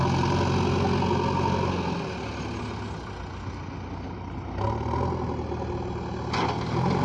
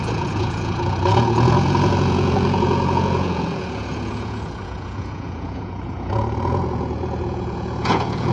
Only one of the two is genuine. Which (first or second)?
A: first